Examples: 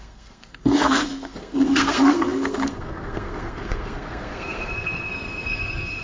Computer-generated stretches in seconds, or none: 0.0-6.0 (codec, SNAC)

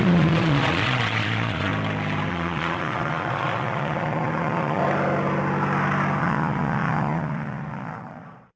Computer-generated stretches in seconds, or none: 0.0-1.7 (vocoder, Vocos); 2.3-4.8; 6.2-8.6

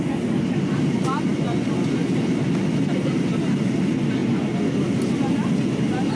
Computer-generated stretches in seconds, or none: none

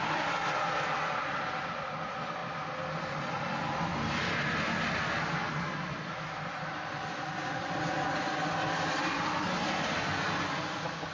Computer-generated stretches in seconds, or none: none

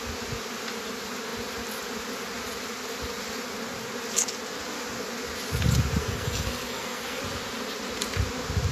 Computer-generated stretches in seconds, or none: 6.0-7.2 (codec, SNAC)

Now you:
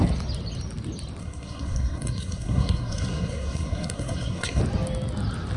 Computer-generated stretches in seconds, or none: 1.2-4.6 (codec, SNAC)

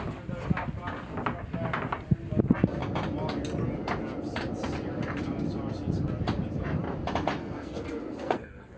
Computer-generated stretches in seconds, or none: 7.4-8.8 (codec, SNAC)

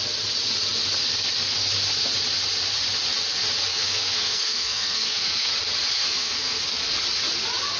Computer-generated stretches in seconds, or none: 3.7-5.5 (codec, SNAC); 6.0-6.6